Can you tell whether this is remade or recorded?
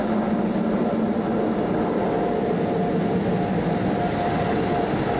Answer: recorded